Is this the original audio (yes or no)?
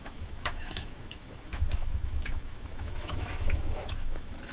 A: no